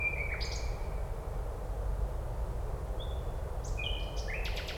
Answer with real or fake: real